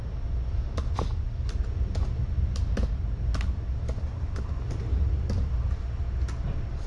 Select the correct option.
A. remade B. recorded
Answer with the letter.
B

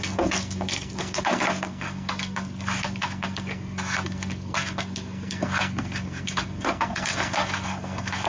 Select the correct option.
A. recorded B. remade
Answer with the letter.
B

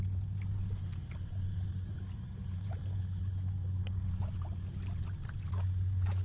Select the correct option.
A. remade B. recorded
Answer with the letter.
B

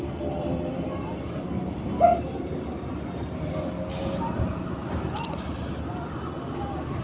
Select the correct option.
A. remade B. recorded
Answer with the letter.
A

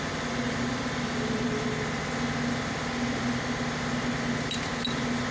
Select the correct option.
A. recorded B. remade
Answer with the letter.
A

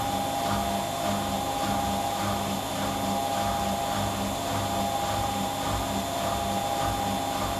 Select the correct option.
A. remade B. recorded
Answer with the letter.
B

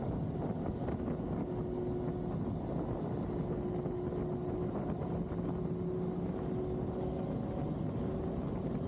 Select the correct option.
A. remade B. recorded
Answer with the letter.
B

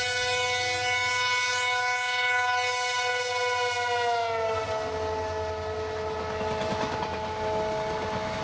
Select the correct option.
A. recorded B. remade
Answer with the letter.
A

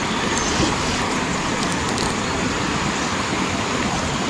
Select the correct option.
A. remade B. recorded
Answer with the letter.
B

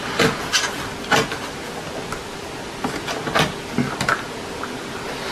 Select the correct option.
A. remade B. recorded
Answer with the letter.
B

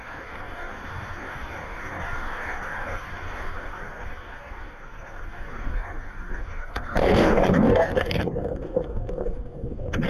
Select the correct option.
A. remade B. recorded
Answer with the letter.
A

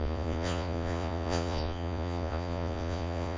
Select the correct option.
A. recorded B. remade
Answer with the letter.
B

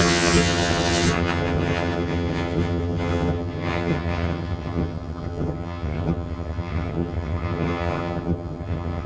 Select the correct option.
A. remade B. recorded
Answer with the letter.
A